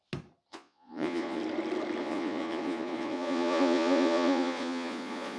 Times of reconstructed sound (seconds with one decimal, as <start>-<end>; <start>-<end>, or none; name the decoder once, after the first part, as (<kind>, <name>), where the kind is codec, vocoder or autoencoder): 0.5-1.4 (vocoder, Vocos); 2.0-5.4